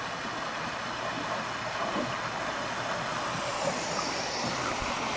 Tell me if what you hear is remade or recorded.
recorded